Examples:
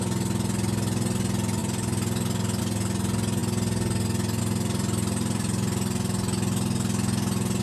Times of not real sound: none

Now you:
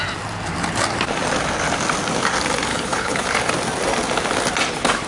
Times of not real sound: 2.7-3.3

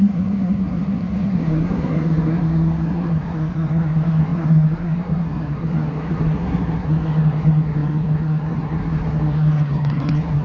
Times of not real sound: 0.0-10.4

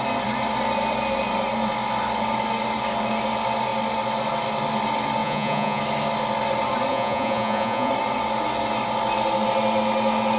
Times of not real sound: 5.2-5.8; 6.9-7.9